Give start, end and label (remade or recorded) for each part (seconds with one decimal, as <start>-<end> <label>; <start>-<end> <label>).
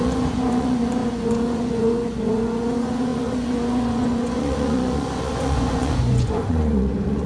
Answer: 0.0-7.3 remade